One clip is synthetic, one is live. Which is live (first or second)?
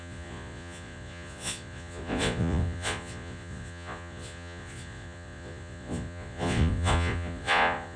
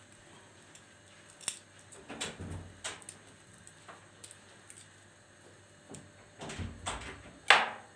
second